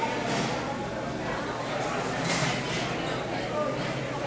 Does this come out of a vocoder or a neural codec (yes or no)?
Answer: no